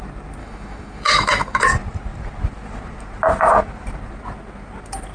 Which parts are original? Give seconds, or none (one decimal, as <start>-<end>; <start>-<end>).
0.0-0.4; 1.6-5.1